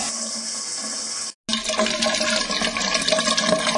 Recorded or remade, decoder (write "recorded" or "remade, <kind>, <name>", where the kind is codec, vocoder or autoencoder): recorded